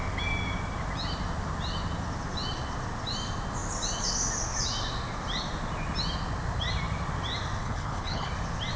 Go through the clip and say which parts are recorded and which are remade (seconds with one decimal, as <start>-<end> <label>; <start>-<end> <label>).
0.0-7.6 recorded; 7.6-8.3 remade; 8.3-8.8 recorded